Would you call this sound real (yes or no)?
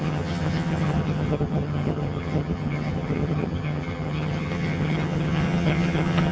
no